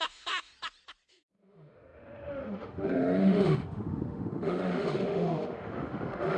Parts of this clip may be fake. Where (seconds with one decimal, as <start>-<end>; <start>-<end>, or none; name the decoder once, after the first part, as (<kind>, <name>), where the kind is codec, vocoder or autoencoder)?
0.0-0.5 (autoencoder, DAC-VAE); 1.1-6.4